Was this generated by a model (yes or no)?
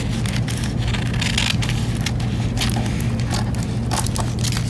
no